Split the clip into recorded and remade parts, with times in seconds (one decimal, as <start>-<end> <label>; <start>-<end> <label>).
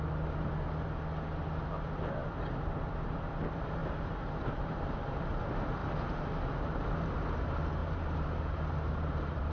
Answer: 0.0-3.8 recorded; 3.8-5.2 remade; 5.2-7.8 recorded; 7.8-9.5 remade